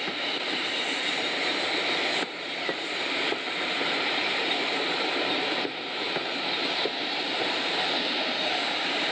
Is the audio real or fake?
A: fake